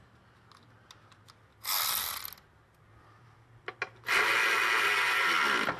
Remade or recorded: recorded